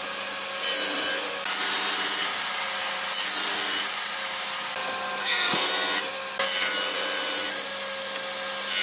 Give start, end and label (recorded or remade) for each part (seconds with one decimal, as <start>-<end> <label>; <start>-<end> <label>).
0.0-5.2 recorded; 5.2-5.7 remade; 5.7-8.8 recorded